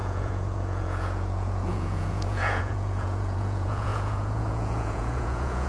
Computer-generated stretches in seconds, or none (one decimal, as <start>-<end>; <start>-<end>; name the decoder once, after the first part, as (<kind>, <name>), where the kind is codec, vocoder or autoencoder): 0.0-5.7 (vocoder, Vocos)